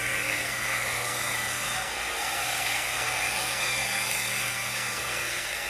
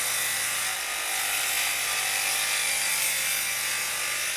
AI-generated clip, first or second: first